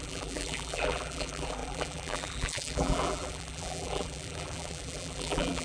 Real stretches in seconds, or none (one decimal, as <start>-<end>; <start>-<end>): none